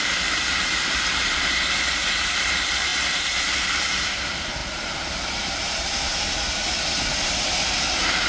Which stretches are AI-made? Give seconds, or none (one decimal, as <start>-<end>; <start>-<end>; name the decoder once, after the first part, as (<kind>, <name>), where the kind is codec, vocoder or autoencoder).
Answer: 0.0-2.9 (vocoder, BigVGAN v2); 3.4-6.1